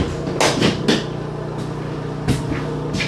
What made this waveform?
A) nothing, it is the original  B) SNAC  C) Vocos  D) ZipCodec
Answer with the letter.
A